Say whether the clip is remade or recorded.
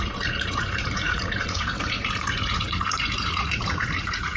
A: remade